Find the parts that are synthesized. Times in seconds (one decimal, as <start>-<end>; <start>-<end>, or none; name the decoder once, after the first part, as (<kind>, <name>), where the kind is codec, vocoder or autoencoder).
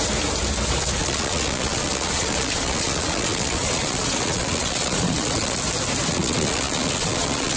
1.0-5.6 (vocoder, Vocos); 6.1-7.6